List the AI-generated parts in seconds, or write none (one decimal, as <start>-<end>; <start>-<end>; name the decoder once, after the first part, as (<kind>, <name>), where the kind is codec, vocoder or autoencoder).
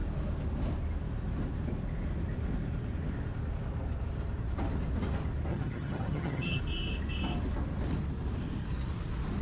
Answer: 5.5-6.6 (vocoder, HiFi-GAN)